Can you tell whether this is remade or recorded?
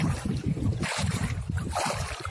recorded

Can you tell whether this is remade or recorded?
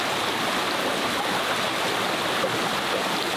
recorded